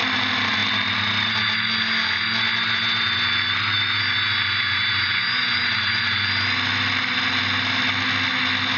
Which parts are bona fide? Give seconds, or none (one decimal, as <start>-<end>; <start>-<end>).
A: 0.0-8.8